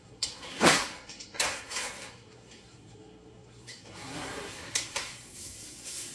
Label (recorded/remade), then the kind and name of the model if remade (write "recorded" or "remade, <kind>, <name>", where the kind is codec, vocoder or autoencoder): remade, codec, SNAC